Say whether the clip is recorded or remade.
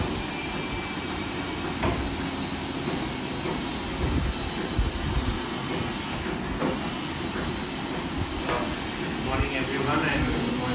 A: recorded